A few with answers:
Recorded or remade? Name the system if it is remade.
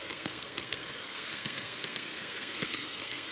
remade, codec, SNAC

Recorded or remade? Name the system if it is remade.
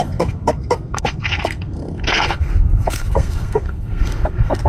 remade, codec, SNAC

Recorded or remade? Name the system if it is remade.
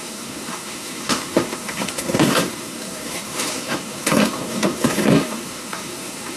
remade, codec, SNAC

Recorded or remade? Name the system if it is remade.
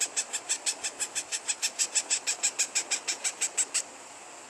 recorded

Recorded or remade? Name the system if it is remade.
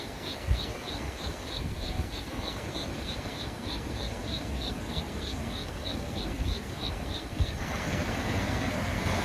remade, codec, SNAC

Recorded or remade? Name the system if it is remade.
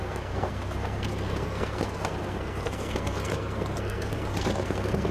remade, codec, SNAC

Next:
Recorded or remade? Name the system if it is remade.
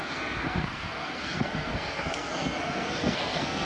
remade, codec, SNAC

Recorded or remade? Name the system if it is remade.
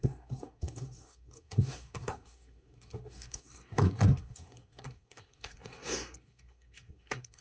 remade, codec, SNAC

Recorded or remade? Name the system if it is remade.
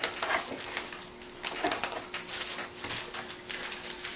recorded